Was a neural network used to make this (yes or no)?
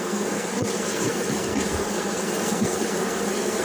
yes